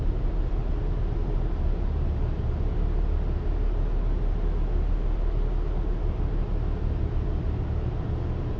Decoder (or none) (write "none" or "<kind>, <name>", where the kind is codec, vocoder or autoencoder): none